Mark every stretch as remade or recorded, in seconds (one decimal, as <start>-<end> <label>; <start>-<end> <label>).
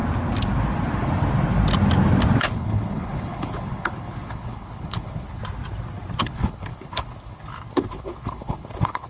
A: 0.0-2.4 recorded; 2.4-5.4 remade; 5.4-6.2 recorded; 6.2-9.1 remade